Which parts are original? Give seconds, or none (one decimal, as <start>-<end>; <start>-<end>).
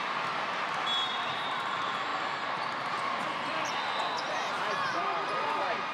0.0-5.9